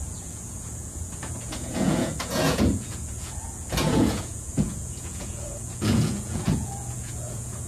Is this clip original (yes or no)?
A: no